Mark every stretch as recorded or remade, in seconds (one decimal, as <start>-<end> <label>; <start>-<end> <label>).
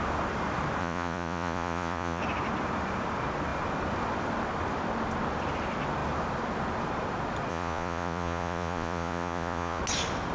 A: 0.0-0.8 recorded; 0.8-2.2 remade; 2.2-7.5 recorded; 7.5-9.8 remade; 9.8-10.3 recorded